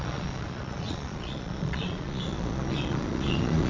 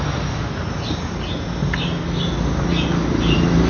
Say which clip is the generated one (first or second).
first